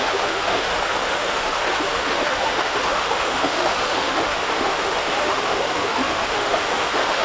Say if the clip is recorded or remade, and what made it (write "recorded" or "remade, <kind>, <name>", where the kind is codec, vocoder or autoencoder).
remade, autoencoder, DAC-VAE